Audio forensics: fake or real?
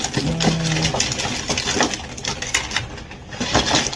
real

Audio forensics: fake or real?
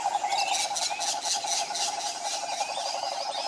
real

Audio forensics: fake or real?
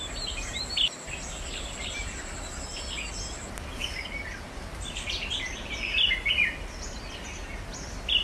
real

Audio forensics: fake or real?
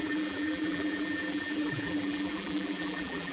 fake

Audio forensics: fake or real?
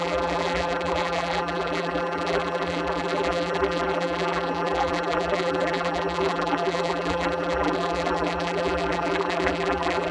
fake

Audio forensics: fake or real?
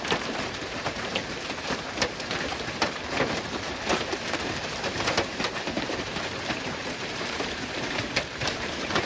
fake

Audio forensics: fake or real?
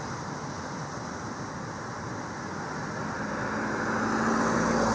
real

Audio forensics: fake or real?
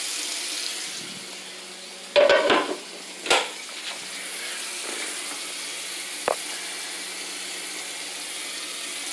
real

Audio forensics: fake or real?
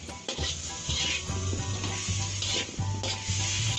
real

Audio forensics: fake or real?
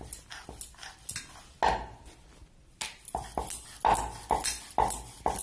real